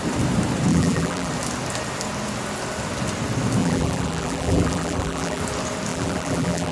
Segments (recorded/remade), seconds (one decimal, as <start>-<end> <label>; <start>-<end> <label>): 0.0-0.7 recorded; 0.7-1.3 remade; 1.3-3.6 recorded; 3.6-5.4 remade; 5.4-5.9 recorded; 5.9-6.7 remade